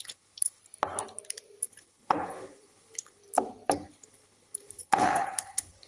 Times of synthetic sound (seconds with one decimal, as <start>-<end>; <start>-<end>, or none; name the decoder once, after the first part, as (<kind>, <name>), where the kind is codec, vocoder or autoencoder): 0.0-0.6 (codec, HILCodec); 1.6-3.2; 3.9-5.9